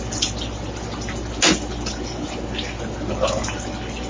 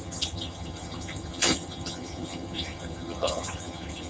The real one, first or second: first